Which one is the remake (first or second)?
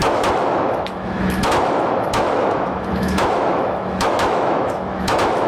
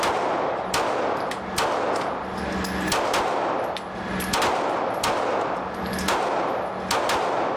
first